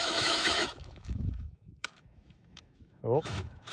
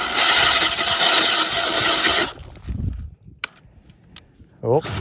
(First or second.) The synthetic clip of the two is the first